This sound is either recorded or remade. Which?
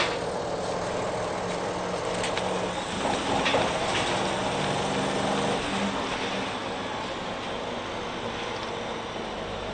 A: recorded